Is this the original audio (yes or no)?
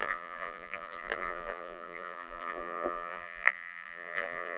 no